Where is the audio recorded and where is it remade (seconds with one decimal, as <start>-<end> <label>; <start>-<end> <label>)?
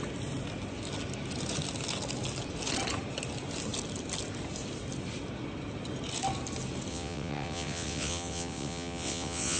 0.0-6.9 recorded; 6.9-9.6 remade